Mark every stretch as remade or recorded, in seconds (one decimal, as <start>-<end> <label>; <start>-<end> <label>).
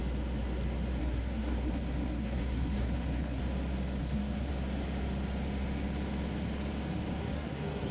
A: 0.0-1.0 recorded; 1.0-3.4 remade; 3.4-4.0 recorded; 4.0-4.5 remade; 4.5-7.2 recorded; 7.2-7.9 remade